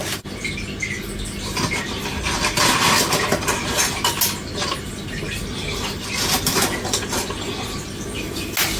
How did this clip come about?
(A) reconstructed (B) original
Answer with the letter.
B